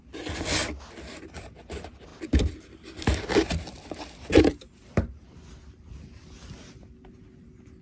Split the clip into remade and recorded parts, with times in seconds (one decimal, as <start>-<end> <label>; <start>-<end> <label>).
0.0-7.8 recorded

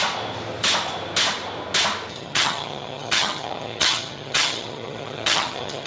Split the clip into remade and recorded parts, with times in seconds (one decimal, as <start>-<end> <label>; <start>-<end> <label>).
0.0-2.1 recorded; 2.1-5.9 remade